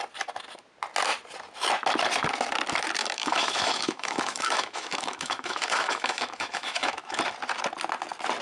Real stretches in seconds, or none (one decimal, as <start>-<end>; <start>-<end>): 0.0-3.0; 7.2-8.4